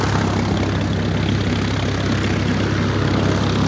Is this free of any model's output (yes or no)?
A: yes